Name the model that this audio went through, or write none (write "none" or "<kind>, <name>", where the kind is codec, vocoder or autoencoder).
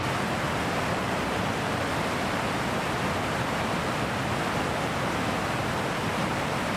none